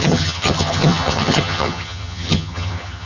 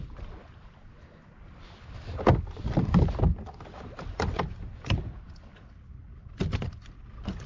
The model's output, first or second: first